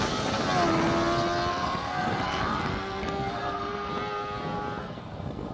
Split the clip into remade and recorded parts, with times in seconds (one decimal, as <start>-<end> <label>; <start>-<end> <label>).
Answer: 0.0-1.5 recorded; 1.5-3.9 remade; 3.9-4.8 recorded; 4.8-5.5 remade